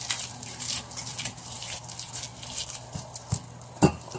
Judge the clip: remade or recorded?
recorded